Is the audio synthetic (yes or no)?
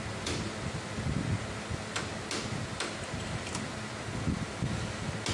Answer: no